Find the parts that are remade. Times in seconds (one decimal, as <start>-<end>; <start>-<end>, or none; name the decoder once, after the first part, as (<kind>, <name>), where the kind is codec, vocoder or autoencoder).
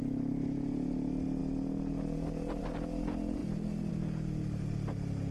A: none